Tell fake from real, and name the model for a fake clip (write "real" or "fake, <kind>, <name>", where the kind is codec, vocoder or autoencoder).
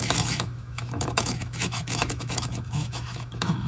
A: fake, autoencoder, DAC-VAE